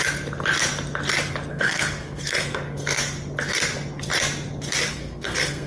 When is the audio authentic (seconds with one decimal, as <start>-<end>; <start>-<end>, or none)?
0.0-1.5; 3.0-4.9